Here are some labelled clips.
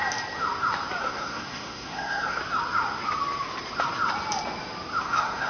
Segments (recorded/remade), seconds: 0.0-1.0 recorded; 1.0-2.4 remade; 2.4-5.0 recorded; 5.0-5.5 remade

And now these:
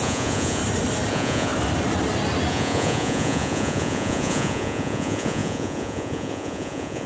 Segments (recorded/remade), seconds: 0.0-0.6 remade; 0.6-1.1 recorded; 1.1-1.5 remade; 1.5-2.5 recorded; 2.5-7.1 remade

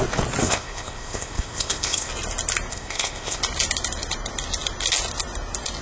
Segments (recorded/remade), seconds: 0.0-0.4 recorded; 0.4-2.1 remade; 2.1-2.7 recorded; 2.7-3.4 remade; 3.4-5.8 recorded

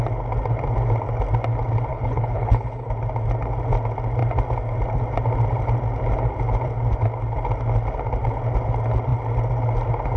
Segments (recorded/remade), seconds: 0.0-1.9 recorded; 1.9-2.9 remade; 2.9-10.2 recorded

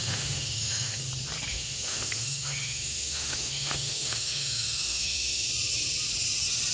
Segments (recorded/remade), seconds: 0.0-1.0 remade; 1.0-1.5 recorded; 1.5-5.5 remade; 5.5-6.7 recorded

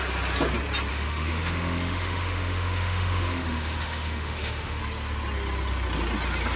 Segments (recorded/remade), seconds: 0.0-0.9 recorded; 0.9-4.8 remade; 4.8-6.6 recorded

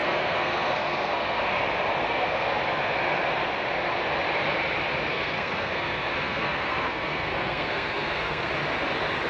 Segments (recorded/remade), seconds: 0.0-1.4 remade; 1.4-2.0 recorded; 2.0-2.6 remade; 2.6-5.1 recorded; 5.1-8.5 remade; 8.5-9.3 recorded

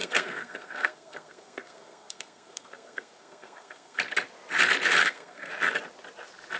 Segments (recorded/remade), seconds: 0.0-4.0 remade; 4.0-5.0 recorded; 5.0-5.5 remade; 5.5-6.6 recorded